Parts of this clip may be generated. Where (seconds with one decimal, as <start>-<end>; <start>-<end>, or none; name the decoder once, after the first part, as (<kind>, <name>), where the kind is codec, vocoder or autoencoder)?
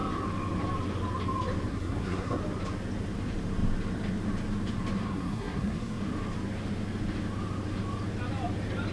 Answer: 1.7-2.4 (codec, SNAC); 5.0-6.0